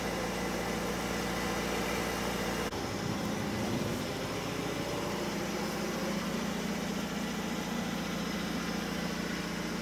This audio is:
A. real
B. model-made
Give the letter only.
A